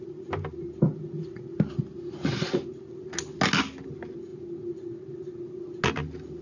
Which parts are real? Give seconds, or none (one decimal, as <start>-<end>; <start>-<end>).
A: 0.0-6.4